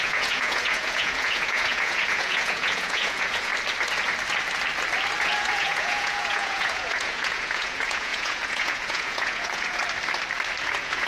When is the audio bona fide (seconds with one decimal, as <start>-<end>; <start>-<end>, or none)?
3.5-5.2; 9.8-10.6